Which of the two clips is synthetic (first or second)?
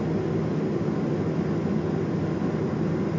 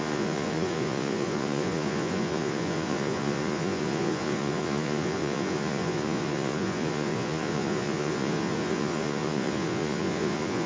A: second